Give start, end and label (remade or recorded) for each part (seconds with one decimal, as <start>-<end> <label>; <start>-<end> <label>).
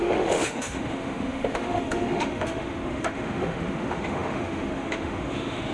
0.0-5.7 remade